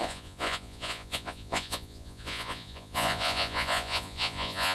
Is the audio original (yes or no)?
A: no